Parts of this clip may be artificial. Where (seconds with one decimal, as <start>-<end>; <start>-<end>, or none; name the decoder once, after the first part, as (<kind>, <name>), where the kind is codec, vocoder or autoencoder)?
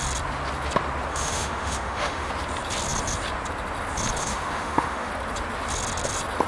1.1-2.3 (autoencoder, DAC-VAE); 4.2-5.1